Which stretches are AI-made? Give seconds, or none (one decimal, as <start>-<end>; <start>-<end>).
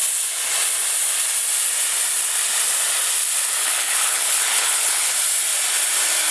3.6-5.1